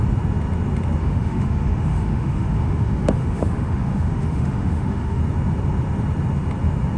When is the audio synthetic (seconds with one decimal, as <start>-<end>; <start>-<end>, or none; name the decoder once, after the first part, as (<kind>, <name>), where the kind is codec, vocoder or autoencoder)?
1.0-5.2 (autoencoder, DAC-VAE)